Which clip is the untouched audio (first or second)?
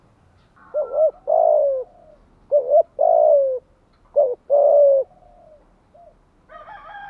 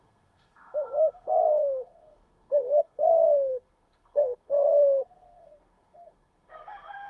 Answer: first